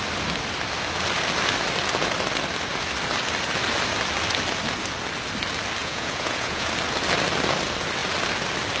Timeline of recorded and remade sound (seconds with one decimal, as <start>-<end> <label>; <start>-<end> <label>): 0.0-5.8 recorded; 5.8-6.7 remade; 6.7-8.8 recorded